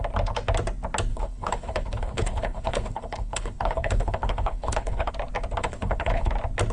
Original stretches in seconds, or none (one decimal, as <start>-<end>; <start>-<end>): 0.0-1.1; 5.1-5.6; 6.3-6.7